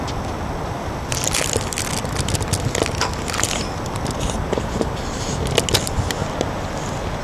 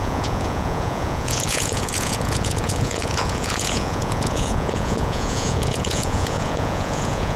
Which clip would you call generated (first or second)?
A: second